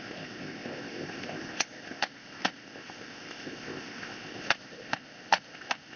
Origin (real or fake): fake